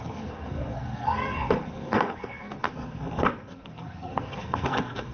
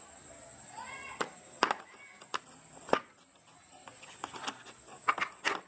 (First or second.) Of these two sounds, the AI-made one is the first